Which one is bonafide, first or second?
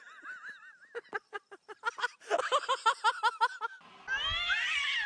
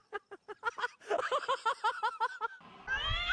first